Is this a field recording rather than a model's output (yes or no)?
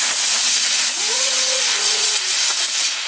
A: no